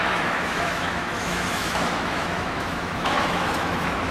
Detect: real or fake fake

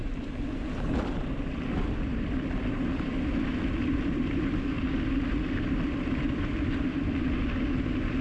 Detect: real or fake fake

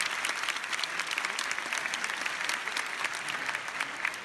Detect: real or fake real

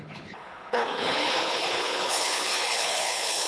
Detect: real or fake fake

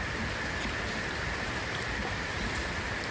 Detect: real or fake fake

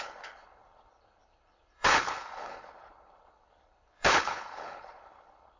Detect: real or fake fake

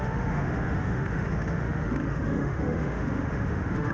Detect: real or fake fake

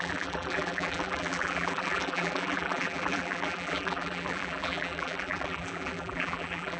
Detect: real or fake fake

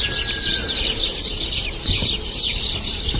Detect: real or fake real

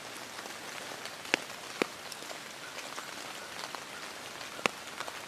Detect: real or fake real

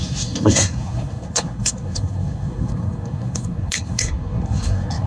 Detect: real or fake fake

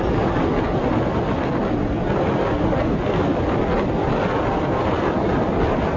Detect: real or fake real